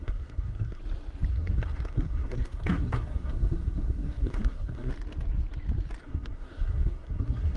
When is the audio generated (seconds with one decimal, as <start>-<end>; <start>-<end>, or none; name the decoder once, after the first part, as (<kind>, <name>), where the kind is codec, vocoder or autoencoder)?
0.0-0.8 (codec, SNAC); 1.3-4.9; 6.0-7.6